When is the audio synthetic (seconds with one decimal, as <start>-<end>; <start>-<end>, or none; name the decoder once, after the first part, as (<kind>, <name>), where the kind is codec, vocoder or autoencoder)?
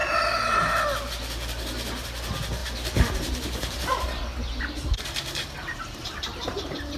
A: 2.6-7.0 (vocoder, BigVGAN v2)